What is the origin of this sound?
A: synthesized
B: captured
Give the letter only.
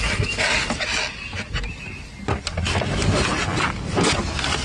B